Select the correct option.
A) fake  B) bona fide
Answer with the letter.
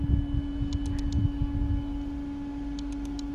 B